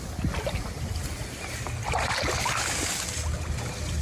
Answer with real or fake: real